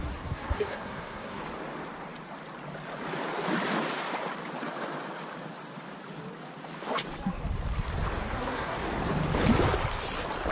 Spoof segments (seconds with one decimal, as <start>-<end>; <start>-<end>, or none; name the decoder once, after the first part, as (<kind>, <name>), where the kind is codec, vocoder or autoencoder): 0.0-1.4 (codec, SNAC); 8.2-8.8